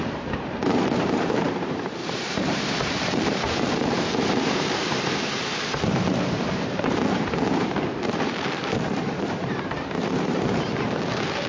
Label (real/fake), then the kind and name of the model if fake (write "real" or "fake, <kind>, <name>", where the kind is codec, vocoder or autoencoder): fake, vocoder, BigVGAN v2